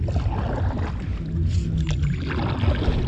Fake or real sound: real